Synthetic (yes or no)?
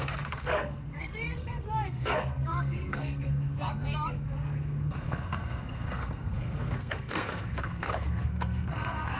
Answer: yes